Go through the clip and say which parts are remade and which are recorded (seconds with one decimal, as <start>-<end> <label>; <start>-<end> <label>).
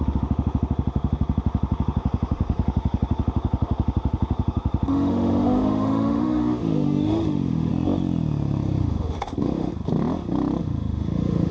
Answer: 0.0-7.7 remade; 7.7-8.8 recorded; 8.8-9.7 remade; 9.7-10.6 recorded; 10.6-11.5 remade